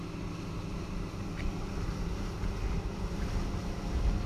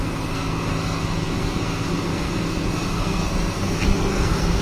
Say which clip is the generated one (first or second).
second